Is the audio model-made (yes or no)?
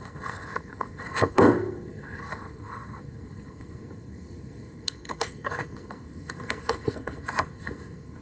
yes